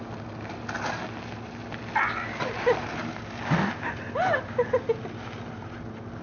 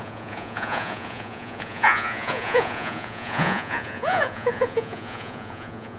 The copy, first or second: second